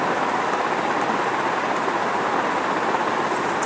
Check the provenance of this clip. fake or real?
real